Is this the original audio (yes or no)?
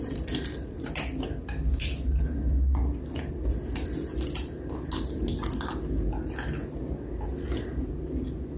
yes